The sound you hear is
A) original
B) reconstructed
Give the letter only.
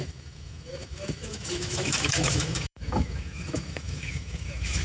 B